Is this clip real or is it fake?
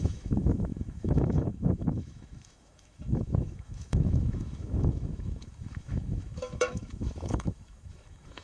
fake